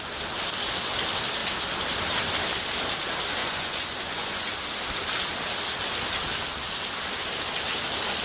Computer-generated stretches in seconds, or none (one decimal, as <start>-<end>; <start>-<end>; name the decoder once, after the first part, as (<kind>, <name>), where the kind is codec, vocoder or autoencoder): 3.4-4.5 (vocoder, Vocos)